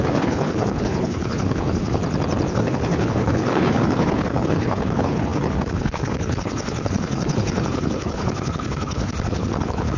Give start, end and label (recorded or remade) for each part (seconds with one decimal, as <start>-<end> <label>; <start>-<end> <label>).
0.0-2.0 remade; 2.0-2.5 recorded; 2.5-10.0 remade